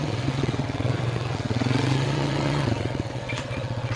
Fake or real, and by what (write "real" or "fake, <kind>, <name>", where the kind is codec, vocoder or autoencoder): fake, vocoder, WaveNeXt